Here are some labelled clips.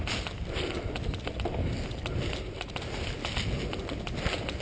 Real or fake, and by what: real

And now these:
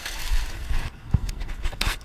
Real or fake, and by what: fake, codec, SNAC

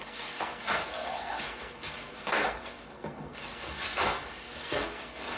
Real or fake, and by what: fake, codec, SNAC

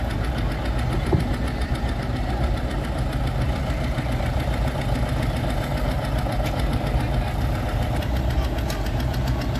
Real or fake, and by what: real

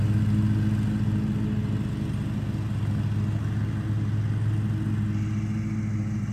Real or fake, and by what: real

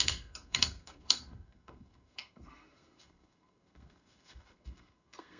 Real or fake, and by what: fake, codec, SNAC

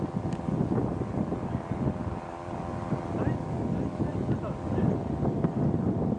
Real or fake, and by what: real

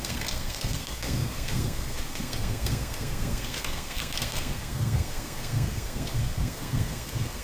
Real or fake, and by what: fake, codec, SNAC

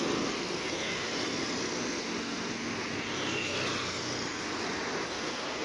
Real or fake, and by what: real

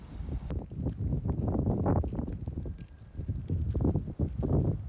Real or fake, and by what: real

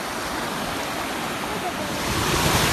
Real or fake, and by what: real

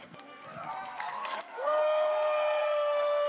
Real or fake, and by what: fake, codec, SNAC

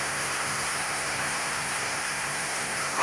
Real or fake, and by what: fake, codec, SNAC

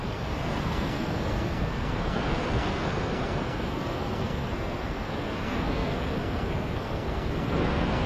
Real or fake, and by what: fake, codec, SNAC